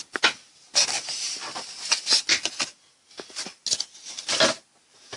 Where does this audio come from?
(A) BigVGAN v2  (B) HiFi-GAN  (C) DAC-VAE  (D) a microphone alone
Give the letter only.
D